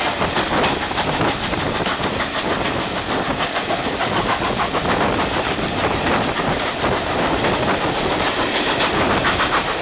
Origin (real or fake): real